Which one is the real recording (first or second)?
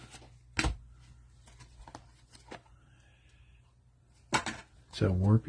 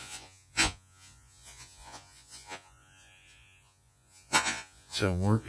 first